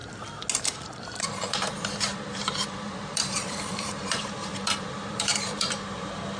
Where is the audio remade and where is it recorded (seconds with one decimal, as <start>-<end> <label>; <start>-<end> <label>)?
0.0-0.6 recorded; 0.6-6.4 remade